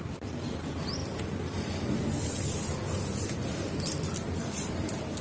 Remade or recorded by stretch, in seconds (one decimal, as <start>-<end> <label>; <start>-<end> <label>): 0.0-5.2 recorded